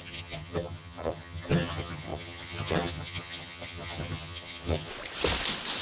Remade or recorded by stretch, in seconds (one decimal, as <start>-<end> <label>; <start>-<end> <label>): 0.0-4.9 remade; 4.9-5.8 recorded